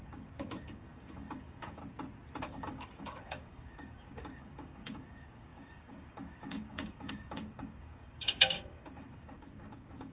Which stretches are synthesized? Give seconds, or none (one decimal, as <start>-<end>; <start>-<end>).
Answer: 0.0-1.8; 2.3-10.1